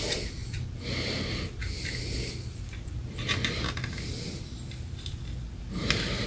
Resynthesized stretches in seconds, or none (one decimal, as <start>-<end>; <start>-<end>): none